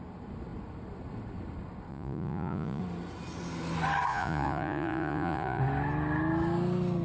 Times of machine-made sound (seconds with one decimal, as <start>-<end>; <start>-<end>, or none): 1.9-2.8; 4.1-5.6